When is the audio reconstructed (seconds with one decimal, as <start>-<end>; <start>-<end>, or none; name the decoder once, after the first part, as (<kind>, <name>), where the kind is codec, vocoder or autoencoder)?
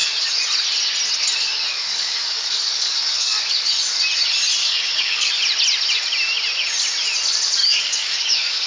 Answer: 1.7-3.7 (codec, DAC); 4.6-5.3; 7.6-8.7